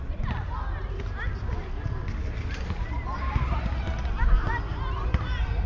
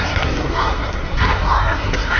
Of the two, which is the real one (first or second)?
first